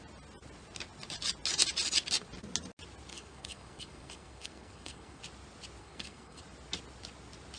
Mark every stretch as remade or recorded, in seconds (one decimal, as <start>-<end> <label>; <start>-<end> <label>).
0.0-3.1 recorded; 3.1-5.2 remade; 5.2-5.8 recorded; 5.8-6.4 remade; 6.4-7.6 recorded